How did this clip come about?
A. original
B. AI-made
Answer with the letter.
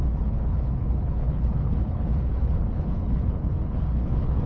B